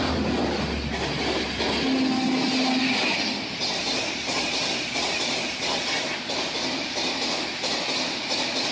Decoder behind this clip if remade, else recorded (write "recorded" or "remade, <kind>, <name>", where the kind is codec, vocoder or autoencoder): recorded